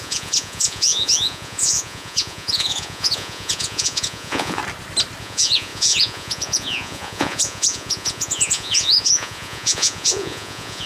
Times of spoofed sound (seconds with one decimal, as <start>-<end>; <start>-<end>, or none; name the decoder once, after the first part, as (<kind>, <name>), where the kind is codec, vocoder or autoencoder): 0.0-4.6 (vocoder, Vocos); 5.2-10.9